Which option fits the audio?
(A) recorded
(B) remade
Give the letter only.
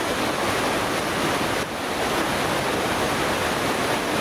A